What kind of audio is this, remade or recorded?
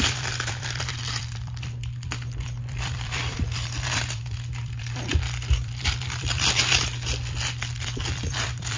remade